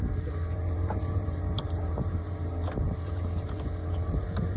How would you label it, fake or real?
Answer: fake